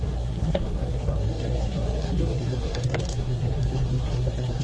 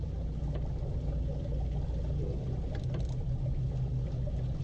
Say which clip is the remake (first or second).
first